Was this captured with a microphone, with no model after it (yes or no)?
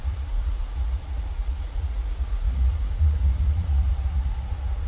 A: no